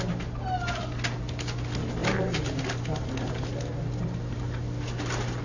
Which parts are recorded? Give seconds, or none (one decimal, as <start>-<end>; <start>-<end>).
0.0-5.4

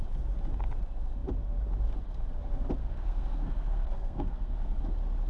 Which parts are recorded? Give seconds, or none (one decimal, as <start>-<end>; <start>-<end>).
0.0-2.8; 4.8-5.3

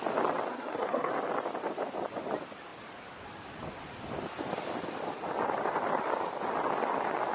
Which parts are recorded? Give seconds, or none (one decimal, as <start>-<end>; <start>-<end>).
0.0-0.5; 1.1-7.3